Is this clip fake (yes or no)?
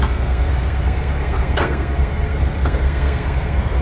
yes